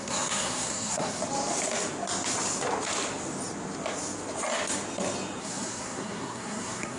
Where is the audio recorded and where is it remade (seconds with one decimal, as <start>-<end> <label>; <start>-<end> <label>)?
0.0-1.2 remade; 1.2-5.4 recorded; 5.4-7.0 remade